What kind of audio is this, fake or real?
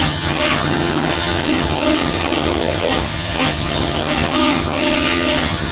fake